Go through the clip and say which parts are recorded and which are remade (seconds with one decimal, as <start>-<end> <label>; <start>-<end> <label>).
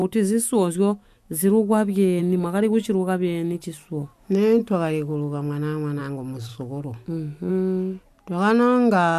0.0-2.2 remade; 2.2-6.5 recorded; 6.5-7.5 remade; 7.5-9.2 recorded